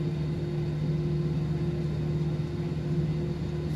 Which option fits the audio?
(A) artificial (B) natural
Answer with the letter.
B